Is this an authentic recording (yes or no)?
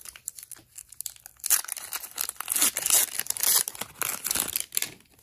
yes